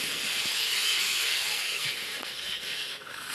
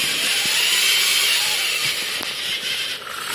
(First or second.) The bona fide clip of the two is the second